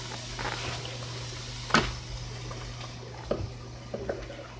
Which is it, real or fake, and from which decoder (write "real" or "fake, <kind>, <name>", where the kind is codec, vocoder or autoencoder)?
real